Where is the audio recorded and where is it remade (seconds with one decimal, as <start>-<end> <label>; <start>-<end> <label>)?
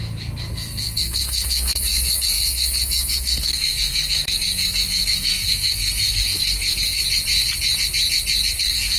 0.0-7.0 remade; 7.0-8.6 recorded; 8.6-9.0 remade